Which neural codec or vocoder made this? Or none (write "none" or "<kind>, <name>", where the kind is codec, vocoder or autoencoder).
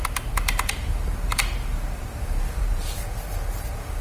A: vocoder, BigVGAN v2